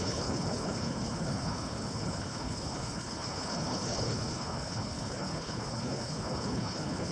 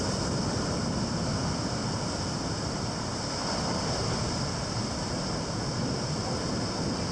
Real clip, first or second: second